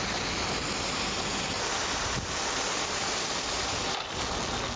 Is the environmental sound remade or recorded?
recorded